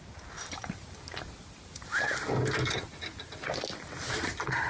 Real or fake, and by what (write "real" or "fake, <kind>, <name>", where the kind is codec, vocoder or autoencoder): real